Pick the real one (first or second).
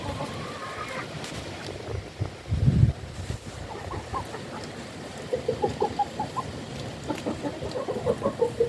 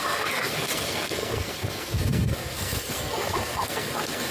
first